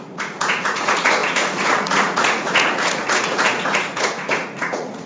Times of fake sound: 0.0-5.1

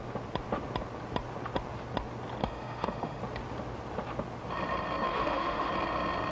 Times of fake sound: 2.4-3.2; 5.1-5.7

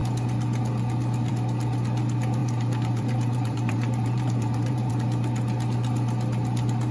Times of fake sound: 2.4-4.9

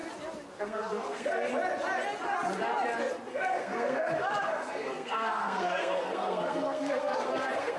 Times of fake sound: 0.6-1.5; 3.3-7.8